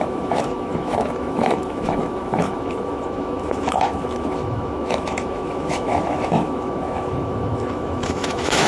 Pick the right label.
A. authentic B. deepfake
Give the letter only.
B